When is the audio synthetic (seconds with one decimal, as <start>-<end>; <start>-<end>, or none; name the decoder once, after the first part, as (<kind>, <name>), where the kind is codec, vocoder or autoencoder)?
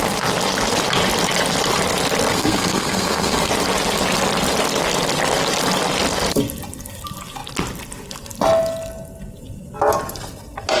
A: 2.3-3.5 (codec, SNAC)